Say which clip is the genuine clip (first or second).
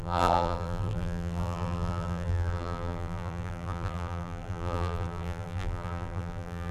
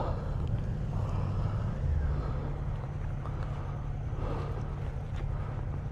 second